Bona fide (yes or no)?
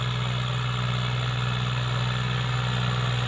yes